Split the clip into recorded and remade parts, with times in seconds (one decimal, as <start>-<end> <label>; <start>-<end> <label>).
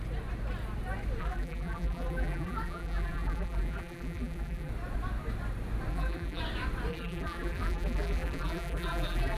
0.0-1.2 recorded; 1.2-4.7 remade; 4.7-5.9 recorded; 5.9-6.4 remade; 6.4-6.9 recorded; 6.9-9.4 remade